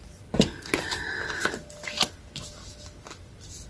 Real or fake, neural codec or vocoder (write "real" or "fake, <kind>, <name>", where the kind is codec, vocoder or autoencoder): real